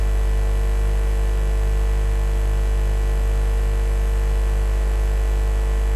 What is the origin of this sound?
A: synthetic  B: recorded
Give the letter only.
B